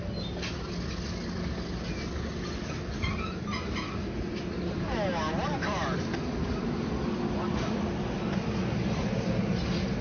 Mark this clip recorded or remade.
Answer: recorded